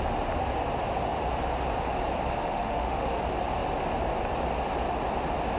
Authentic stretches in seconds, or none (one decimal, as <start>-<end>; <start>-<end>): 0.0-2.3; 3.2-5.6